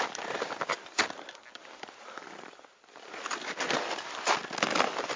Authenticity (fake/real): real